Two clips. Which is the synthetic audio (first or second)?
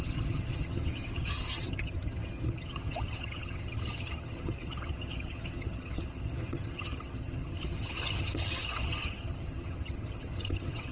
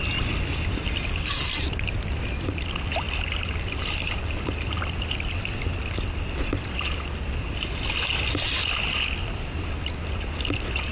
first